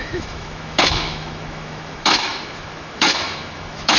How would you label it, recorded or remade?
remade